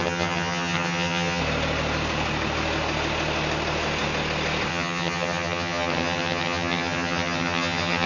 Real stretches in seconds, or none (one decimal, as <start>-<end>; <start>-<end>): 1.4-4.7